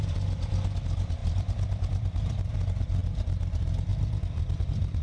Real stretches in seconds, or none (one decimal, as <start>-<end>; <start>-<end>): 0.0-1.2; 2.5-3.0; 3.5-3.9